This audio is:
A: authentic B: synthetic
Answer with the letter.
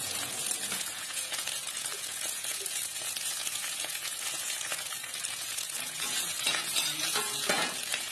B